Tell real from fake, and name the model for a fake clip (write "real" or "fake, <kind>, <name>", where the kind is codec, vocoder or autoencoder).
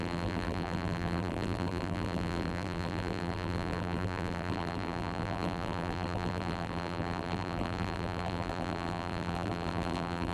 fake, vocoder, BigVGAN v2